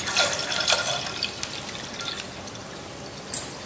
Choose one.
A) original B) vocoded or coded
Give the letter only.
A